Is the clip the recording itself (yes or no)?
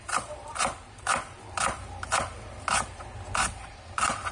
no